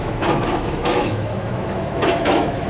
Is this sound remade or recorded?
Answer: remade